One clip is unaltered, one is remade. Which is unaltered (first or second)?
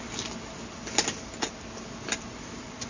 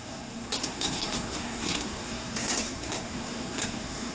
first